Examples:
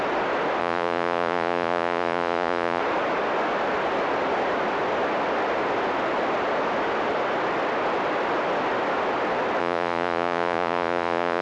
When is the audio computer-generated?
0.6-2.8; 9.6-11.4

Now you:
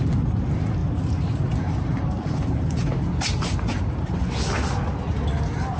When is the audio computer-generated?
0.8-4.2

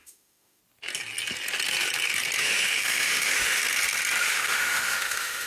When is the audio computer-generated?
0.0-0.6; 2.4-3.6; 4.2-5.5